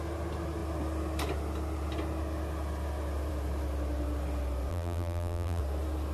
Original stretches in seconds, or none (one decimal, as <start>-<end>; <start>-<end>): 0.0-4.7; 5.6-6.1